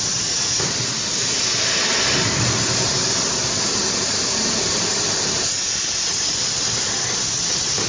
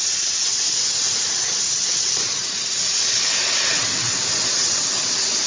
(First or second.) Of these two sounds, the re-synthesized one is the second